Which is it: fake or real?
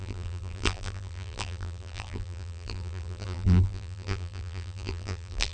fake